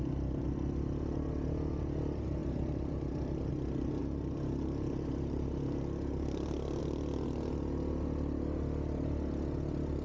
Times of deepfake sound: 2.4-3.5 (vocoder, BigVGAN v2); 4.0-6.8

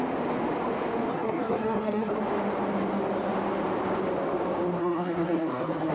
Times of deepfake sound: 1.1-2.1 (codec, SNAC); 4.8-5.9

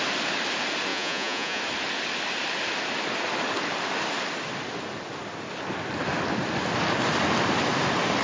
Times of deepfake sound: 0.9-1.6 (vocoder, Vocos)

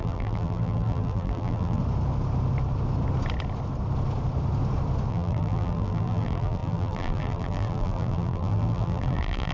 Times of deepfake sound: 0.0-1.8 (vocoder, BigVGAN v2); 5.1-9.5

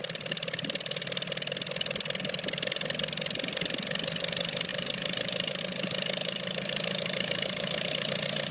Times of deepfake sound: 4.7-5.6 (vocoder, BigVGAN v2); 6.2-7.9

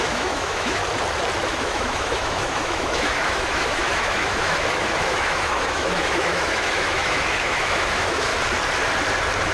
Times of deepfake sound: 0.0-0.8 (autoencoder, DAC-VAE); 1.5-8.3

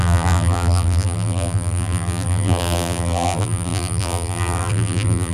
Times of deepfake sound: 0.0-5.3 (vocoder, BigVGAN v2)

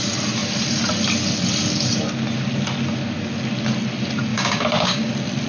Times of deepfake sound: 4.3-5.1 (codec, DAC)